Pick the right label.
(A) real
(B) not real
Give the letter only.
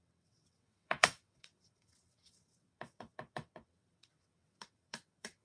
B